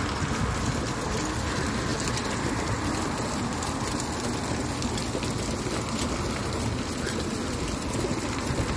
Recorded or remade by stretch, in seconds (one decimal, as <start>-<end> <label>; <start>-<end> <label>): 0.0-8.8 recorded